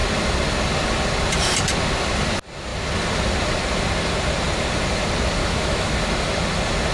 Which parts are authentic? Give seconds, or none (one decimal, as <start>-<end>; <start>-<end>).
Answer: 0.0-5.4; 5.9-6.9